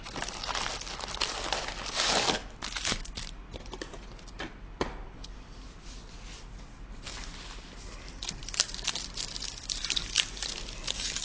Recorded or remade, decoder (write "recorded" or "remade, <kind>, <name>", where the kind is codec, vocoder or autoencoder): recorded